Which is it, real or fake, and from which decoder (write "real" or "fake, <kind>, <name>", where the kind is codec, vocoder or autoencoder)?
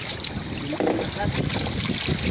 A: real